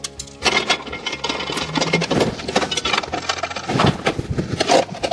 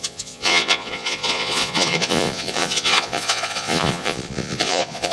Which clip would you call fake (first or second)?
second